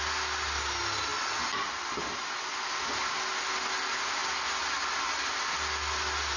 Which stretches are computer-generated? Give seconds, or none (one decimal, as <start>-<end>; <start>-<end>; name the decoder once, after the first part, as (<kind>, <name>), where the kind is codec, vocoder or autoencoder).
none